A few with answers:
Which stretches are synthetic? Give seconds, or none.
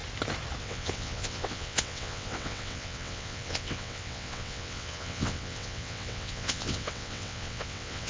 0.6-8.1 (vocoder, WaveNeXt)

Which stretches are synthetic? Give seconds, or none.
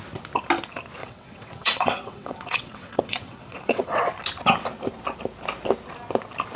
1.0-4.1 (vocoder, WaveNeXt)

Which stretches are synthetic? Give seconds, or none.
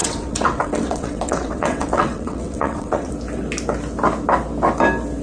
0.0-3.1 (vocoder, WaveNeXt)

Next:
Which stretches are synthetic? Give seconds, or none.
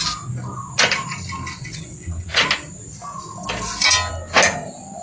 1.6-2.4 (vocoder, WaveNeXt)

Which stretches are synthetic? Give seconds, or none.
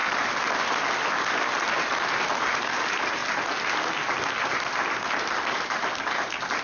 none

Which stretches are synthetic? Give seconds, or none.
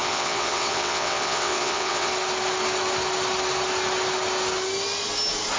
0.0-2.1 (vocoder, WaveNeXt)